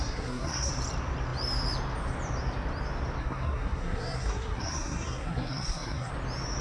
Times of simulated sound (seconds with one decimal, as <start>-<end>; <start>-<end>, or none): 0.0-0.7; 3.2-6.1